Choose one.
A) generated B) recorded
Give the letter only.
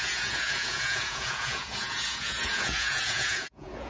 A